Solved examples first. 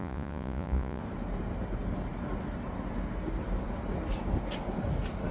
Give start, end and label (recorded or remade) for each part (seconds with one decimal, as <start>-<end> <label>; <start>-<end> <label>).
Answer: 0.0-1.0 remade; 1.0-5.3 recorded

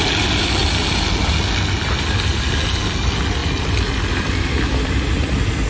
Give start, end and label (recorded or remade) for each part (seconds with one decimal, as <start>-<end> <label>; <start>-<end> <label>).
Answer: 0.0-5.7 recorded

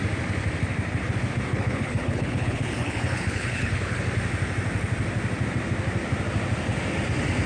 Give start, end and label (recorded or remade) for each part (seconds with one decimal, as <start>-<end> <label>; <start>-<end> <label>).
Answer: 0.0-1.5 recorded; 1.5-4.0 remade; 4.0-7.5 recorded

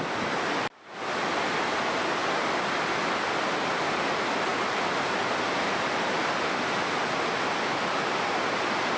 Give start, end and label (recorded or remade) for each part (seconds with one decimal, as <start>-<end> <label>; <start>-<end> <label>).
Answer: 0.0-2.2 recorded; 2.2-2.8 remade; 2.8-9.0 recorded